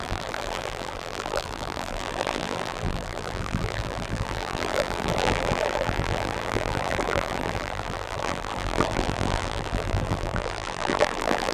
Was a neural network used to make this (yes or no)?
yes